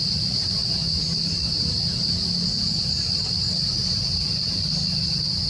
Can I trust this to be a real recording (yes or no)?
yes